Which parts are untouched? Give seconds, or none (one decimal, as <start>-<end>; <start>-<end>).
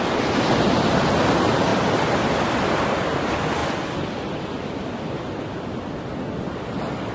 0.0-1.7; 3.2-7.1